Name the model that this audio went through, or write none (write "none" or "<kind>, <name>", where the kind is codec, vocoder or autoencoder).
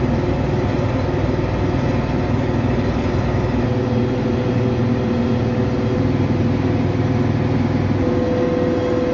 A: none